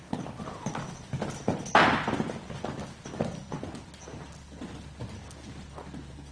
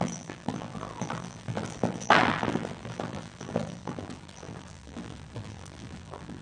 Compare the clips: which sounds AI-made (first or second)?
second